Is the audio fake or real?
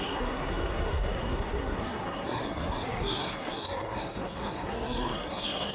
fake